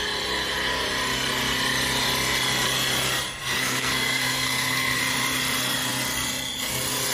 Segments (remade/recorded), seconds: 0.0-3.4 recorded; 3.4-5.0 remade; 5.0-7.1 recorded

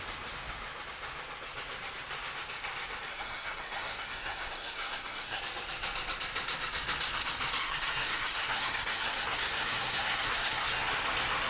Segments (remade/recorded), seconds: 0.0-3.1 recorded; 3.1-5.4 remade; 5.4-7.6 recorded; 7.6-10.9 remade; 10.9-11.5 recorded

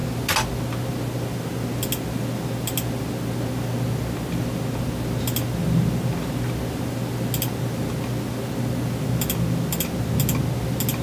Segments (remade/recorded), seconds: 0.0-11.0 recorded

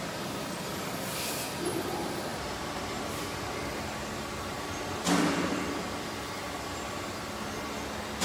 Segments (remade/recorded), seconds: 0.0-8.2 recorded

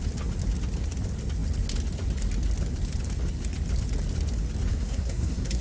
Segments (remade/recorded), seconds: 0.0-4.7 recorded; 4.7-5.6 remade

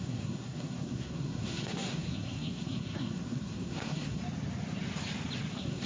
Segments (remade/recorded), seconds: 0.0-4.2 remade; 4.2-5.5 recorded; 5.5-5.9 remade

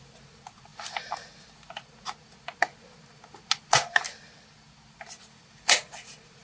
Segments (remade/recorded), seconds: 0.0-6.4 recorded

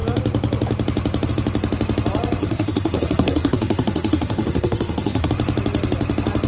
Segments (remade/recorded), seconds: 0.0-2.4 recorded; 2.4-5.3 remade; 5.3-6.5 recorded